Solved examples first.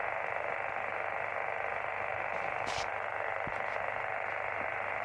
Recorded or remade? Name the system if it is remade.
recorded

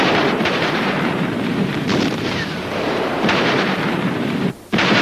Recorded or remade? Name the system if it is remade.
remade, vocoder, BigVGAN v2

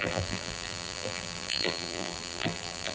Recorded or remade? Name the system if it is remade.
remade, vocoder, BigVGAN v2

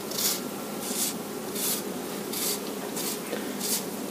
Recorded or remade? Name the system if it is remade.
recorded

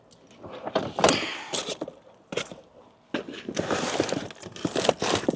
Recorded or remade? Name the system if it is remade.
recorded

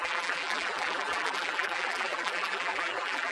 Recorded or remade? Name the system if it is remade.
remade, vocoder, BigVGAN v2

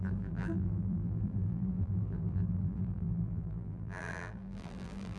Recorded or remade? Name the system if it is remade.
remade, vocoder, BigVGAN v2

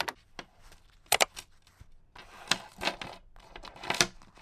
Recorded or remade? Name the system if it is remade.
remade, vocoder, BigVGAN v2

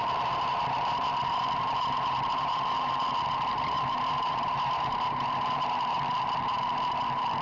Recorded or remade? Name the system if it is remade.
remade, vocoder, BigVGAN v2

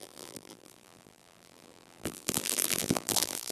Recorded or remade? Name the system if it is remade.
remade, vocoder, BigVGAN v2